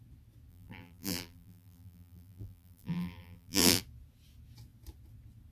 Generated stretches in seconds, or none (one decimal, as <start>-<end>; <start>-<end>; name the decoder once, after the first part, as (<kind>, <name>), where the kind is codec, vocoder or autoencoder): 0.5-3.8 (vocoder, BigVGAN v2)